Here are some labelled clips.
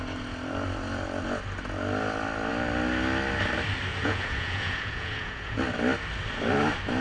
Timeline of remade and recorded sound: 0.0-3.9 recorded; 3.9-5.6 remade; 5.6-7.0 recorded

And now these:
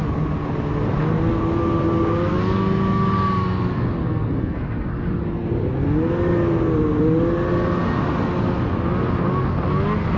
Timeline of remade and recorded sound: 0.0-4.0 recorded; 4.0-4.9 remade; 4.9-10.2 recorded

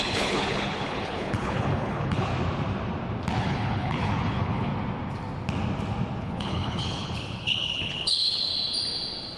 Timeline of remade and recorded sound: 0.0-2.3 remade; 2.3-3.4 recorded; 3.4-4.7 remade; 4.7-6.2 recorded; 6.2-8.5 remade; 8.5-9.4 recorded

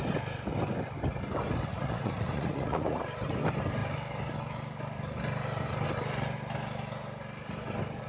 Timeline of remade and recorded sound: 0.0-1.7 recorded; 1.7-3.0 remade; 3.0-8.1 recorded

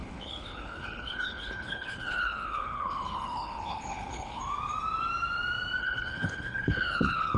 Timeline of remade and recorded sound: 0.0-4.4 remade; 4.4-5.8 recorded; 5.8-7.4 remade

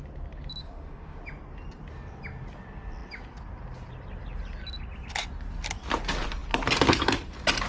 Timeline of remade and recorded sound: 0.0-0.6 recorded; 0.6-1.2 remade; 1.2-7.7 recorded

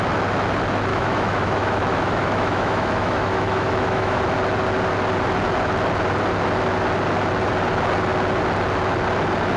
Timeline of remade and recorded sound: 0.0-0.9 recorded; 0.9-4.2 remade; 4.2-9.6 recorded